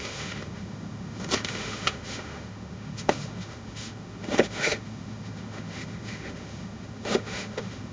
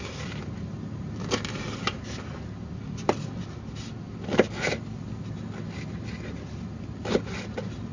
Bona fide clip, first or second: second